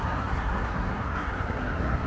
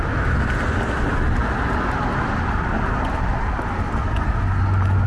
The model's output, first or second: first